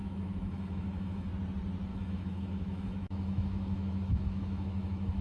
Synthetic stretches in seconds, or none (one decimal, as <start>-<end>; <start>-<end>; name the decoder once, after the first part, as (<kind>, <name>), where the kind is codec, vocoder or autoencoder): 0.0-1.3 (autoencoder, DAC-VAE); 1.9-5.2